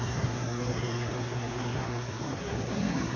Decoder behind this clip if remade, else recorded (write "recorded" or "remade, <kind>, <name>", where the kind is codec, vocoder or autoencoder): remade, codec, SNAC